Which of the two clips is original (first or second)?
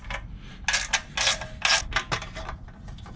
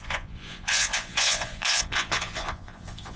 first